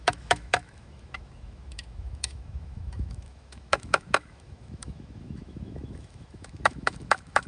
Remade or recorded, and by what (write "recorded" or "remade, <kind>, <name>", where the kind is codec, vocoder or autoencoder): remade, autoencoder, DAC-VAE